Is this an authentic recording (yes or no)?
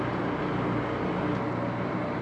yes